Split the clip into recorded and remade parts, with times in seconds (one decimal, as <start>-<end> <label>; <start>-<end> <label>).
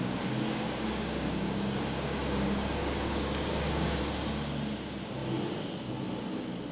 0.0-4.0 remade; 4.0-6.7 recorded